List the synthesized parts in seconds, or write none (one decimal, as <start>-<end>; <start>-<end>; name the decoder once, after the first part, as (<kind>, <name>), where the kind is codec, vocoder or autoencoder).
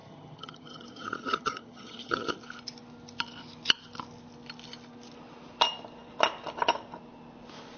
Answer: 0.0-2.4 (vocoder, HiFi-GAN)